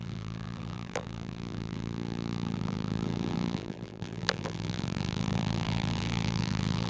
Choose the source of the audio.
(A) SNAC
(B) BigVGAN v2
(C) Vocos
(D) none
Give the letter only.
B